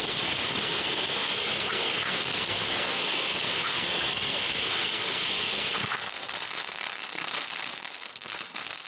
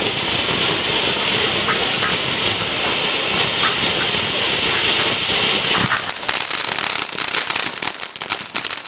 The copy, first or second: first